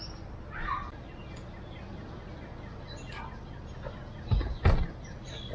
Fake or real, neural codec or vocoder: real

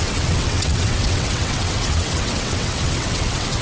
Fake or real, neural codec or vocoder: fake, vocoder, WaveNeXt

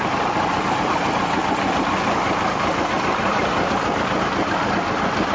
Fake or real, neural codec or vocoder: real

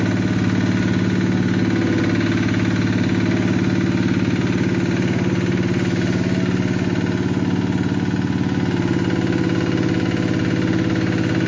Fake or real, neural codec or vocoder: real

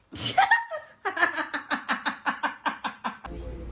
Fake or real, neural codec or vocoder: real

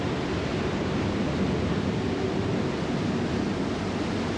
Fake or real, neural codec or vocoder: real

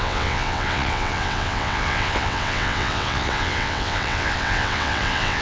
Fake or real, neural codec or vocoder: fake, vocoder, WaveNeXt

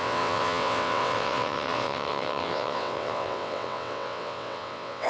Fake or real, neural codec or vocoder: fake, vocoder, WaveNeXt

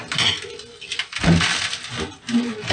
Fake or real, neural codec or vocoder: real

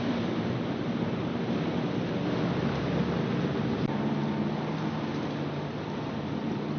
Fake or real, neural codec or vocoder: real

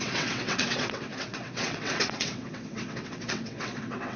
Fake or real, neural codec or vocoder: fake, vocoder, WaveNeXt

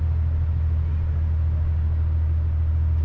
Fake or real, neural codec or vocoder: real